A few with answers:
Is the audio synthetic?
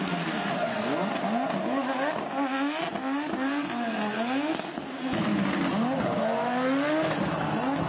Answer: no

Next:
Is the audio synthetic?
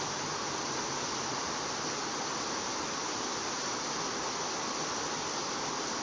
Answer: no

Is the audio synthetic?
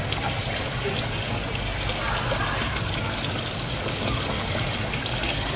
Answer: no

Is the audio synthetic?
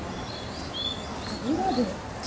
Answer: no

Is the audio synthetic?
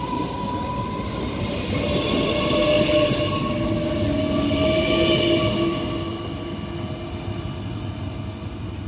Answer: no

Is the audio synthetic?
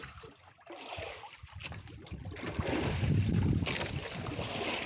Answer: yes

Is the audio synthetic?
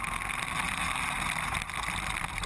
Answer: no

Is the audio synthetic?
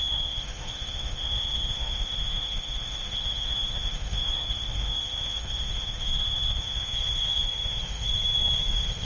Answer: yes